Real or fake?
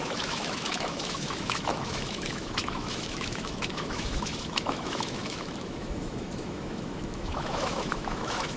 fake